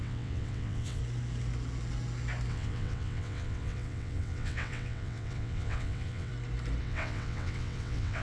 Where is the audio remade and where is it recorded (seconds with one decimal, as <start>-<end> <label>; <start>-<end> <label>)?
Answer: 0.0-1.0 remade; 1.0-2.5 recorded; 2.5-6.3 remade; 6.3-6.8 recorded; 6.8-8.2 remade